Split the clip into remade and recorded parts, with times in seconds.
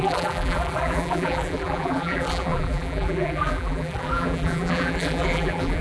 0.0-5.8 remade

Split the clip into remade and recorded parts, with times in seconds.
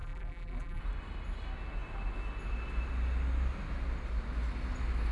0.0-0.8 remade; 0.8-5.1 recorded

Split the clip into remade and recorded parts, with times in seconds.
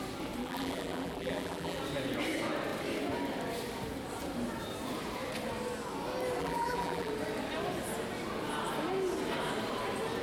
0.0-0.4 recorded; 0.4-1.8 remade; 1.8-6.4 recorded; 6.4-7.1 remade; 7.1-10.2 recorded